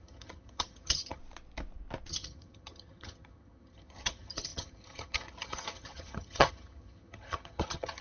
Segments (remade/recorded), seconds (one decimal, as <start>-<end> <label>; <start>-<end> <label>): 0.0-1.2 remade; 1.2-2.1 recorded; 2.1-8.0 remade